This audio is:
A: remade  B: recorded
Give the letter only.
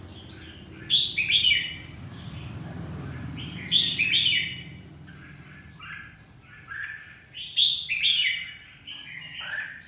B